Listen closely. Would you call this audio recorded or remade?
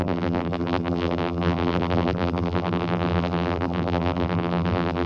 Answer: remade